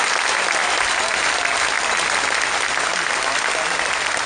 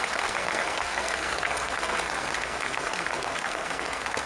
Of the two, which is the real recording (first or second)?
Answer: first